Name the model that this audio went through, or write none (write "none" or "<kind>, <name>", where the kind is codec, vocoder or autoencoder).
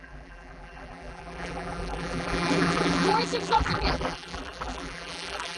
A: vocoder, BigVGAN v2